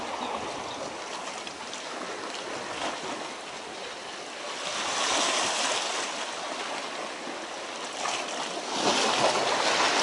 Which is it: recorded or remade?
recorded